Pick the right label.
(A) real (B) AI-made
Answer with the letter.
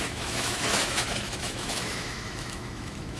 B